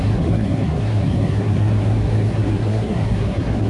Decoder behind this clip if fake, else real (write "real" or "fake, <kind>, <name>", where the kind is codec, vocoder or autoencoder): fake, codec, SNAC